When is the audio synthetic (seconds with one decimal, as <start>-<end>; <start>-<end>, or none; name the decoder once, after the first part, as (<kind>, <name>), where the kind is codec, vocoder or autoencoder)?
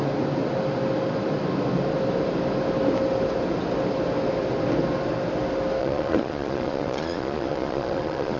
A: 5.8-8.4 (vocoder, Vocos)